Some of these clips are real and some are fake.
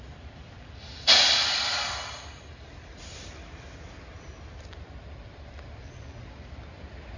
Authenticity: fake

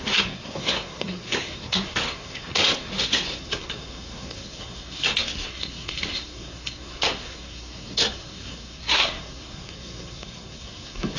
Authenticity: fake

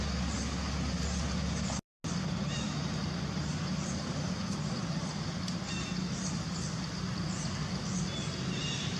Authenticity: real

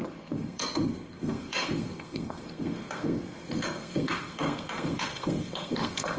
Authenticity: fake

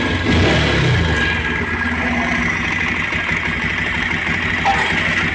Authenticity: real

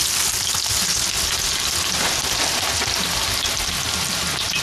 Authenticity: real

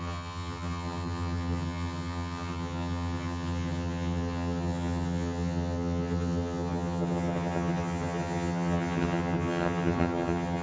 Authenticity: fake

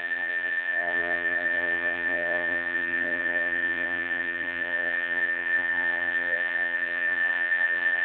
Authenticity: fake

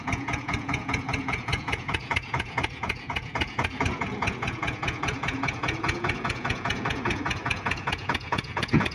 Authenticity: fake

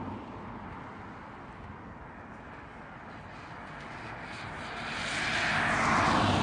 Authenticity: real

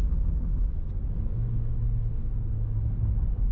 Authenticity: real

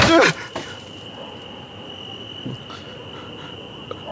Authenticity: real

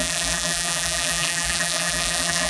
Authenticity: fake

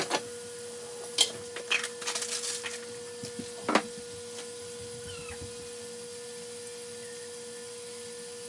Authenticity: real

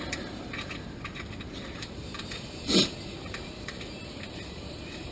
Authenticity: fake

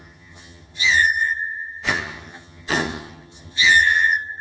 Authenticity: fake